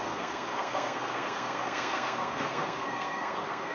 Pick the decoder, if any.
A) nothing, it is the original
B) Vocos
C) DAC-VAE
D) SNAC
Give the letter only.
D